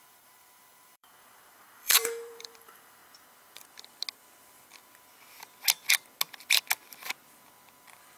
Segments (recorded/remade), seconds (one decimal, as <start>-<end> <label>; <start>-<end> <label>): 0.0-3.0 remade; 3.0-8.2 recorded